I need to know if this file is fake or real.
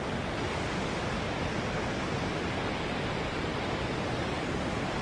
real